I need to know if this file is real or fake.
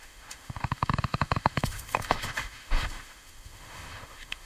fake